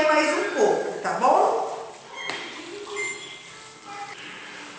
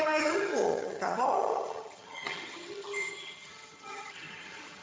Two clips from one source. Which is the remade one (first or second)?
second